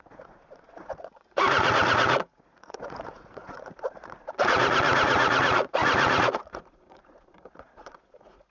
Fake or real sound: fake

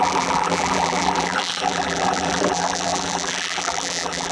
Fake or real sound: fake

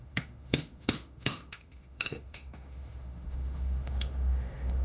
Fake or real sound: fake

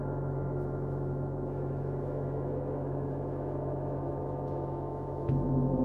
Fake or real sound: fake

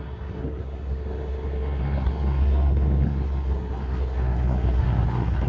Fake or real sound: fake